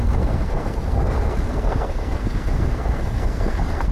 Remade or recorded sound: remade